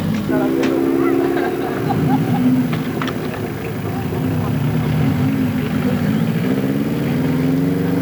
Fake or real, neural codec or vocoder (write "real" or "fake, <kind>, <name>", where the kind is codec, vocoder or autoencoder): real